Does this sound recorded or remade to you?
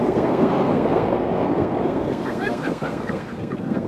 remade